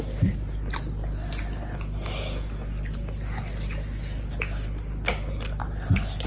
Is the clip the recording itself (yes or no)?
yes